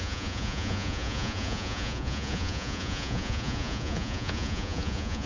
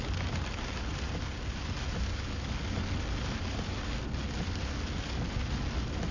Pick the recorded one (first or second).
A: second